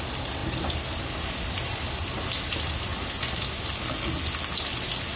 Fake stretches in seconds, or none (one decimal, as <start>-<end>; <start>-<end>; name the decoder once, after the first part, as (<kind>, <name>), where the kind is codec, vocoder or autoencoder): none